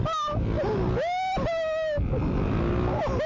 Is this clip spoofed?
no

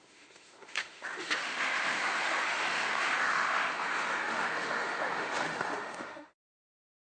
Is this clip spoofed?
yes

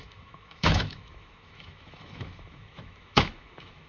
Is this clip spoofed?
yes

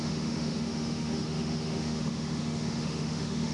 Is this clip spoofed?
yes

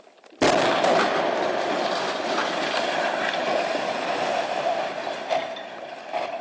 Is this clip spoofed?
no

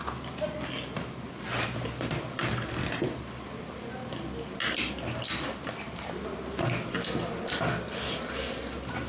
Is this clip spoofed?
no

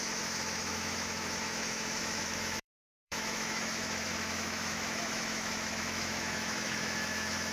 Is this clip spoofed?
yes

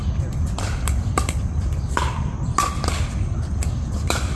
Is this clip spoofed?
no